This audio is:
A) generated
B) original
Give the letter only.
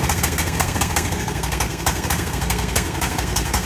A